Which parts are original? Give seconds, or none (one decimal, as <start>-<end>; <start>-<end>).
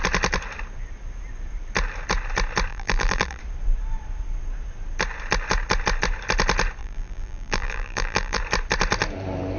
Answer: 0.0-2.7; 3.4-6.8; 8.4-9.6